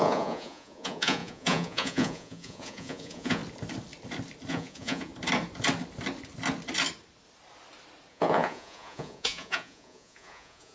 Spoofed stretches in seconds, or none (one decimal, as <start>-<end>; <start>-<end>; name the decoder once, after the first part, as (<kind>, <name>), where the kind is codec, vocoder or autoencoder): 0.0-3.4 (vocoder, Vocos); 4.5-5.1; 8.1-10.7

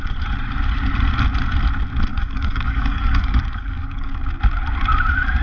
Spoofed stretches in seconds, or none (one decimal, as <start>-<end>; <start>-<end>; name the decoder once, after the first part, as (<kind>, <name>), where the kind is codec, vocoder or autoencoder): 2.1-4.2 (codec, DAC)

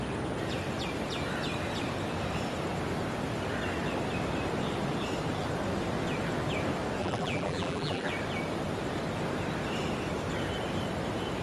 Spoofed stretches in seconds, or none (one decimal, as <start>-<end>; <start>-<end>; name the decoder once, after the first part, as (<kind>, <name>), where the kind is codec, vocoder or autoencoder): 7.0-8.1 (vocoder, BigVGAN v2)

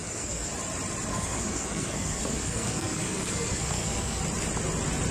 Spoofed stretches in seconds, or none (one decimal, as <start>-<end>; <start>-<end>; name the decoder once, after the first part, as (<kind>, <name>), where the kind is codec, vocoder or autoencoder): 0.0-0.5 (codec, SNAC); 1.1-4.2

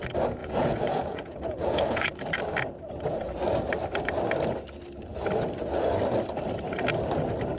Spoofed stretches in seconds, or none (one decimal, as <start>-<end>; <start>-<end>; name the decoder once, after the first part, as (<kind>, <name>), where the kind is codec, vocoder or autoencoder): 0.4-2.1 (vocoder, Vocos)

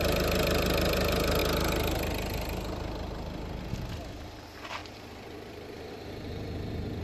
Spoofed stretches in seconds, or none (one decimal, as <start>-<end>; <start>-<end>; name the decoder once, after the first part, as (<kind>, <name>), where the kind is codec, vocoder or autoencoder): none